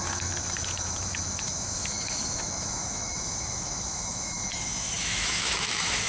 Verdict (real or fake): fake